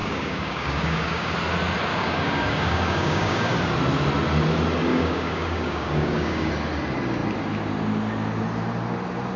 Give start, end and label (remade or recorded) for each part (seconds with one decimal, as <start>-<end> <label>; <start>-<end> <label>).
0.0-1.3 remade; 1.3-1.9 recorded; 1.9-3.5 remade; 3.5-4.9 recorded; 4.9-6.5 remade; 6.5-9.4 recorded